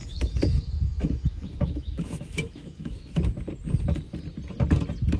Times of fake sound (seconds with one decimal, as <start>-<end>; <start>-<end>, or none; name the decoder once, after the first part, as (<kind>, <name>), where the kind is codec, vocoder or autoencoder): 0.0-3.1 (autoencoder, DAC-VAE)